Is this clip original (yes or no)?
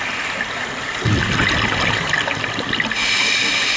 yes